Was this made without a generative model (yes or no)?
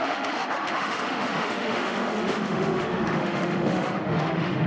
no